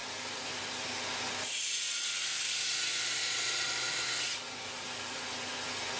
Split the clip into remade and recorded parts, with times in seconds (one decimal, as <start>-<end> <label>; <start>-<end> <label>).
0.0-6.0 recorded